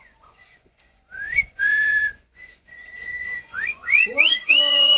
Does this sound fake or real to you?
fake